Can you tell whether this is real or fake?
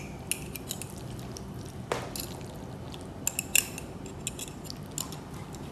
real